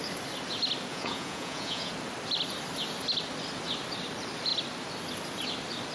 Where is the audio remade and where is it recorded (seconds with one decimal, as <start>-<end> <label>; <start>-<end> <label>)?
0.0-0.9 recorded; 0.9-1.9 remade; 1.9-5.9 recorded